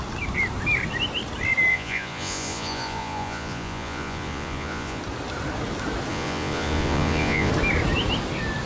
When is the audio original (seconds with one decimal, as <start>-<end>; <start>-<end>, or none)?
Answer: 0.0-1.7; 5.0-6.1; 7.5-8.7